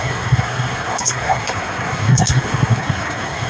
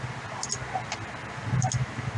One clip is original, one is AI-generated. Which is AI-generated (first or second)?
first